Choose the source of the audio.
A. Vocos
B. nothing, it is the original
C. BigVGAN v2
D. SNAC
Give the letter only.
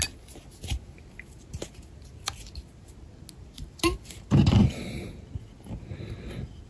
B